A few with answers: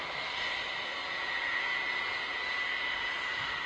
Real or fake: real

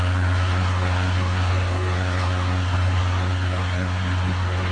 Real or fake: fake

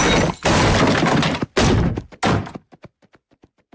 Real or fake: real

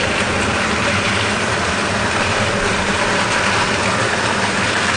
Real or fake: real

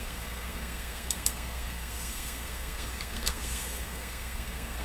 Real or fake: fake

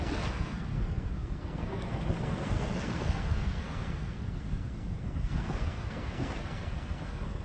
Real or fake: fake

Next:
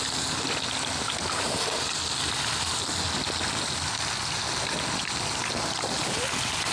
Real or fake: real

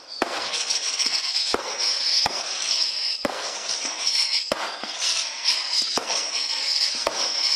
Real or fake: fake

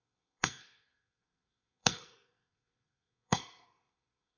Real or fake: fake